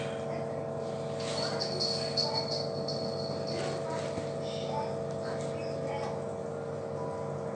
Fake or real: real